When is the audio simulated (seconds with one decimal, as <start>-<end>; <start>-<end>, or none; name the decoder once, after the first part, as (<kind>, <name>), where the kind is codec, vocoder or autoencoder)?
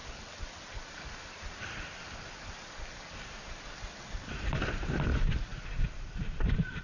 0.0-6.8 (vocoder, BigVGAN v2)